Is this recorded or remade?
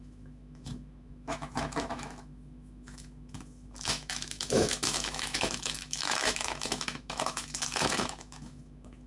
remade